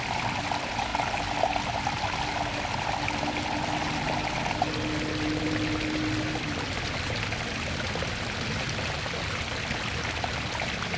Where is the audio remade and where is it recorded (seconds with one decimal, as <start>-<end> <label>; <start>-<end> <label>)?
0.0-11.0 recorded